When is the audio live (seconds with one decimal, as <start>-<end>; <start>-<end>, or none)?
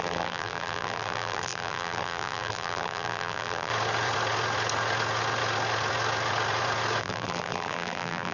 3.7-7.0